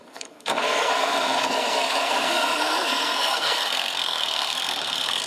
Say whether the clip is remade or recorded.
remade